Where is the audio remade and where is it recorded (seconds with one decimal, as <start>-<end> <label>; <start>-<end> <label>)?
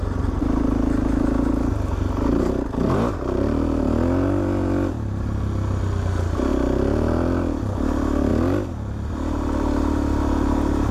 0.0-10.9 recorded